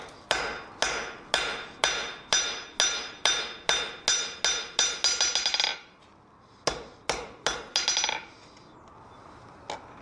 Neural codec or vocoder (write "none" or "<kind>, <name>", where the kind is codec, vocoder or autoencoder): none